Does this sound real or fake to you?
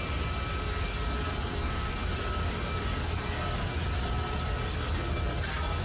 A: real